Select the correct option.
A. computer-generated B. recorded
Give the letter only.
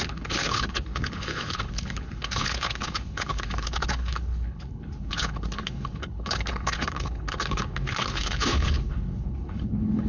A